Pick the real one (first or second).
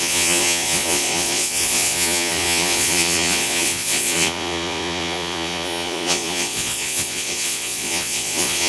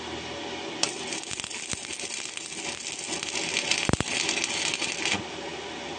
second